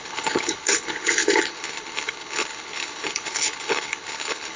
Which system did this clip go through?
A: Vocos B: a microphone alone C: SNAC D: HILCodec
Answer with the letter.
D